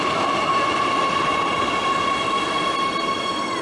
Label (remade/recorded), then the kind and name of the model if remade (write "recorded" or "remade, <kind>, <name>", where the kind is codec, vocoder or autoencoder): recorded